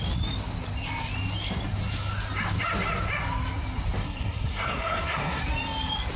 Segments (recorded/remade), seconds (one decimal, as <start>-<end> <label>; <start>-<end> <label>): 0.0-4.0 recorded; 4.0-5.4 remade; 5.4-6.2 recorded